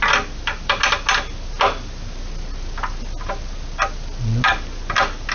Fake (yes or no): no